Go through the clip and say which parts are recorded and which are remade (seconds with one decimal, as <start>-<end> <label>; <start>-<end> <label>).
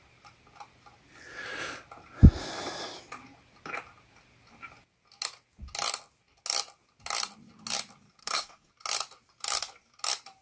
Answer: 0.0-8.2 recorded; 8.2-8.7 remade; 8.7-10.4 recorded